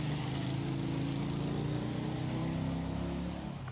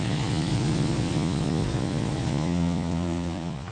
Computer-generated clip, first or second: second